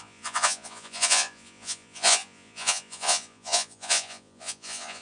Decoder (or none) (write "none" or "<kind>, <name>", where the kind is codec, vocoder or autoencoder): vocoder, Vocos